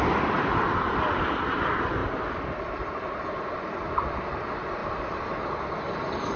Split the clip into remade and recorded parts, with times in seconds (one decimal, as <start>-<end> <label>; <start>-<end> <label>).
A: 0.0-6.4 recorded